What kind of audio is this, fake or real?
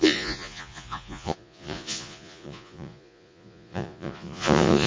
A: fake